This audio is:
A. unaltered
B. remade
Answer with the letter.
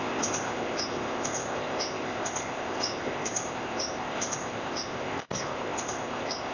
B